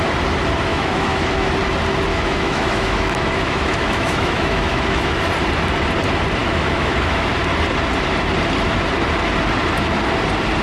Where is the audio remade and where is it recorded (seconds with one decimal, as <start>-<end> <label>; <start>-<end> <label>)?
0.0-0.7 recorded; 0.7-1.5 remade; 1.5-2.1 recorded; 2.1-5.2 remade; 5.2-6.4 recorded; 6.4-7.3 remade; 7.3-10.6 recorded